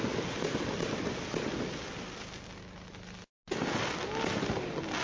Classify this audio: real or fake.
real